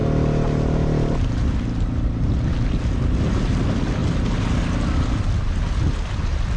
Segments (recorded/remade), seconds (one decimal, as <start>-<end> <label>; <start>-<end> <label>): 0.0-6.6 recorded